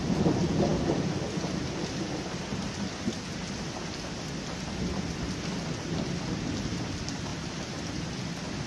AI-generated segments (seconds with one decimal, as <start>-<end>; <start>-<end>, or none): none